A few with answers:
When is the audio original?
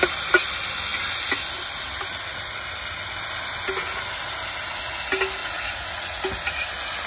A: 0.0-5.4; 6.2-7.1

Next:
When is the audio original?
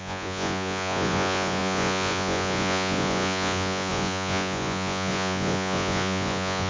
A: none